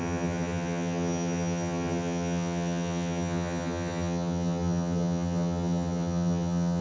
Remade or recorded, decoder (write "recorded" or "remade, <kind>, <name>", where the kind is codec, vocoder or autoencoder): remade, vocoder, HiFi-GAN